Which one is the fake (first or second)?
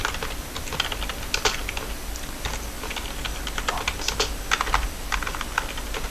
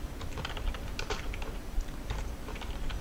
second